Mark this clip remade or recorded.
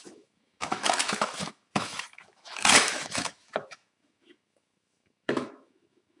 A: remade